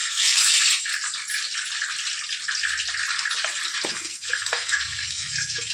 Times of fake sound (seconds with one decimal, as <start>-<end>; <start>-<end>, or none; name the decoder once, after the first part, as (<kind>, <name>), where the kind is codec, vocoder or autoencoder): 0.0-0.9 (codec, SNAC); 3.9-5.7